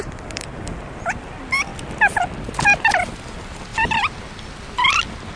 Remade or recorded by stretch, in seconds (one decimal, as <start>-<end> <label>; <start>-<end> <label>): 0.0-0.5 remade; 0.5-1.2 recorded; 1.2-1.7 remade; 1.7-3.3 recorded; 3.3-5.4 remade